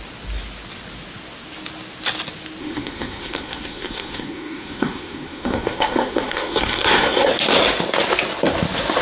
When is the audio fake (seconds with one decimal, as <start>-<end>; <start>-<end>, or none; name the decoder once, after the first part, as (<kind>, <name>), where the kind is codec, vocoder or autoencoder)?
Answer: 2.6-7.3 (codec, SNAC)